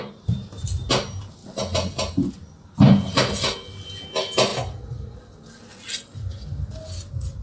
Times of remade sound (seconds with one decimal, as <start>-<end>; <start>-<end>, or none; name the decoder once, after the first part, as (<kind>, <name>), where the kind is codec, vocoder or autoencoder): none